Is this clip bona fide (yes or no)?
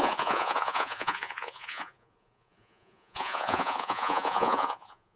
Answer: no